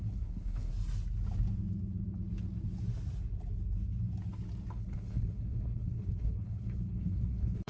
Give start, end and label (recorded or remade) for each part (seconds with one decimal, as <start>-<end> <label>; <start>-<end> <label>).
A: 0.0-0.7 remade; 0.7-4.7 recorded; 4.7-7.7 remade